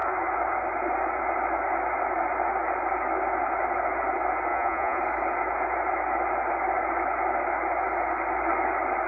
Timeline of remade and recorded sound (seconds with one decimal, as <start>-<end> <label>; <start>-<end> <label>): 0.0-4.5 recorded; 4.5-5.0 remade; 5.0-9.1 recorded